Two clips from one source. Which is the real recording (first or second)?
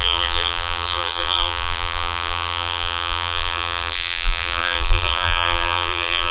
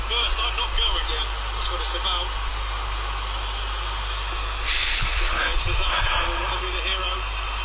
second